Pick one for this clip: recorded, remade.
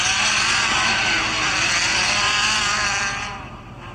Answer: remade